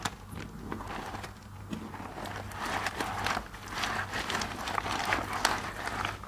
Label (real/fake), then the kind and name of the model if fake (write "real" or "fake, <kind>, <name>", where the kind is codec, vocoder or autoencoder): real